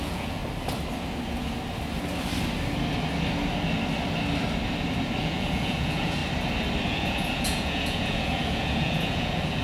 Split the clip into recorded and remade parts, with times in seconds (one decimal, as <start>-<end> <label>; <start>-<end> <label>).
0.0-0.4 remade; 0.4-5.2 recorded; 5.2-6.2 remade; 6.2-6.9 recorded; 6.9-9.6 remade